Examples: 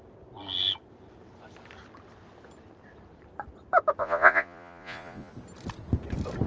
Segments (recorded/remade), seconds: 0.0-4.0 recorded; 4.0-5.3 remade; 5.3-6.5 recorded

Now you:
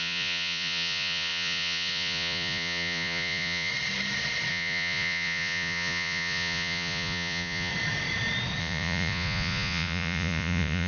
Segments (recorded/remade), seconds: 0.0-3.7 remade; 3.7-4.5 recorded; 4.5-7.7 remade; 7.7-8.6 recorded; 8.6-10.9 remade

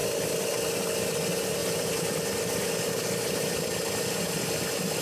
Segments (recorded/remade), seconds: 0.0-1.0 recorded; 1.0-1.6 remade; 1.6-2.3 recorded; 2.3-5.0 remade

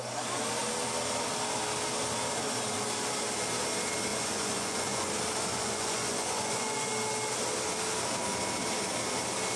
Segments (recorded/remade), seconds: 0.0-4.1 recorded; 4.1-5.1 remade; 5.1-5.5 recorded; 5.5-6.9 remade; 6.9-9.6 recorded